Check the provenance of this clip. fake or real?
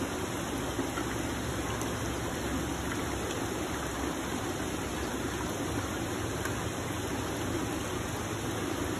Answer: real